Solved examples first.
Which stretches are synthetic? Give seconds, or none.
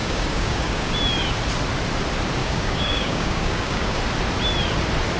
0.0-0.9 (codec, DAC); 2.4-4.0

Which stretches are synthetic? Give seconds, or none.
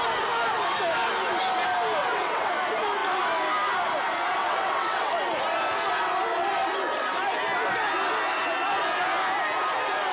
2.0-2.5 (vocoder, WaveNeXt); 4.4-5.1